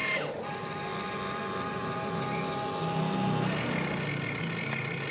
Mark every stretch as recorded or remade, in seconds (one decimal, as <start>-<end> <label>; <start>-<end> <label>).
0.0-5.1 recorded